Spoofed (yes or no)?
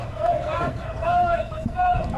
yes